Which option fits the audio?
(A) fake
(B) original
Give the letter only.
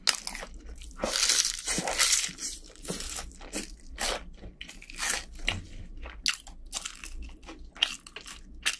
B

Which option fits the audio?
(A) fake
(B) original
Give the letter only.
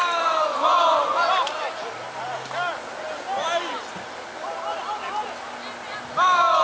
B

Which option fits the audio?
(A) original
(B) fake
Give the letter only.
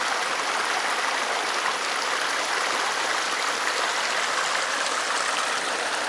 A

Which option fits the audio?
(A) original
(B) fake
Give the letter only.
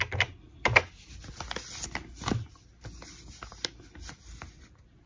A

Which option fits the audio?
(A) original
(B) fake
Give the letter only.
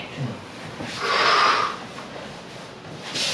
A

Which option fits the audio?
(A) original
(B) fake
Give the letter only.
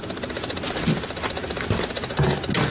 A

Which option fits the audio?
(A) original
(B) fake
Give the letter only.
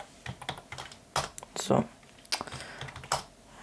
A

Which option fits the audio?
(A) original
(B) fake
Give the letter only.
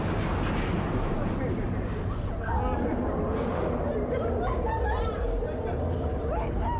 B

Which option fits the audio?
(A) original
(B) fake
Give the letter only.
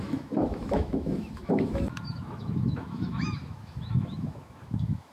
B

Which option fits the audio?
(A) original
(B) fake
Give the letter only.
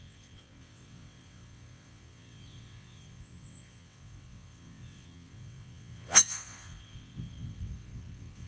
B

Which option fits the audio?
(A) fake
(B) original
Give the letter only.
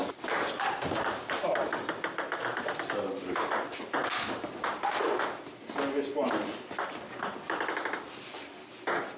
B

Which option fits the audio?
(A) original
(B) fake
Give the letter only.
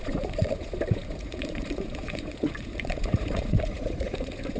B